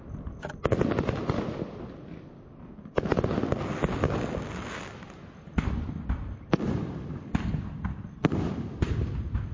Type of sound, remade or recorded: recorded